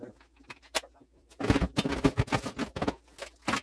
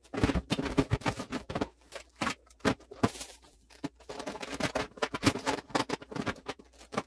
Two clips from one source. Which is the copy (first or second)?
second